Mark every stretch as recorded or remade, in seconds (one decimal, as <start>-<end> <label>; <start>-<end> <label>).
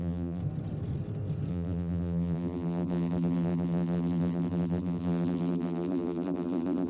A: 0.0-0.4 remade; 0.4-1.5 recorded; 1.5-6.9 remade